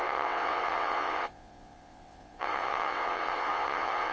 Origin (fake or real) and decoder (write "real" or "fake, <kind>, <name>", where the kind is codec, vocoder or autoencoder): fake, vocoder, WaveNeXt